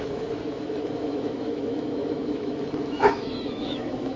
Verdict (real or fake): fake